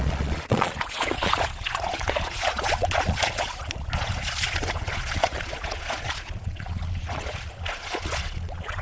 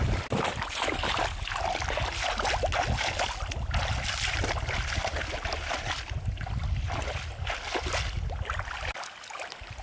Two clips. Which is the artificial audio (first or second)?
first